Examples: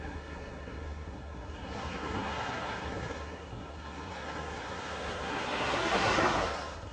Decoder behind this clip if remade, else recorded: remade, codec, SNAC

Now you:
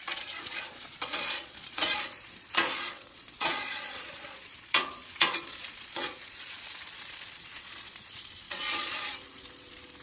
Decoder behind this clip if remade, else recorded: remade, vocoder, Vocos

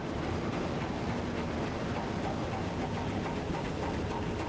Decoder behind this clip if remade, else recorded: recorded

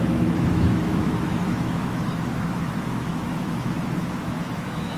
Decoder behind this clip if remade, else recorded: remade, autoencoder, DAC-VAE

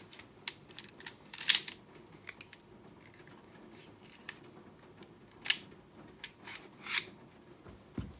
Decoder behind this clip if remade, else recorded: recorded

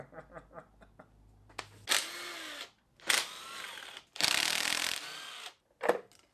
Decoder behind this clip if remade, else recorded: recorded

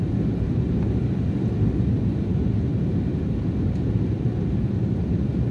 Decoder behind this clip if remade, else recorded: recorded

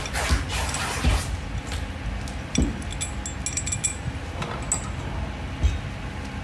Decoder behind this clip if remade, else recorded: recorded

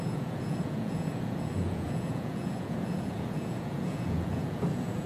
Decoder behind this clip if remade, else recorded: remade, vocoder, Vocos